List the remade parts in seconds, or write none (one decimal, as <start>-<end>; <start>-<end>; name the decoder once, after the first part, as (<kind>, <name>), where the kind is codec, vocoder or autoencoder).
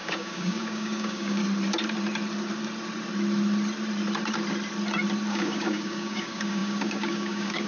0.0-1.4 (codec, DAC); 5.3-7.7